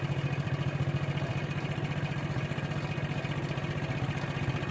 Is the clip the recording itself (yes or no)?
yes